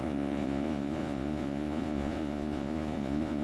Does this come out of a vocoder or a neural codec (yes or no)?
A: yes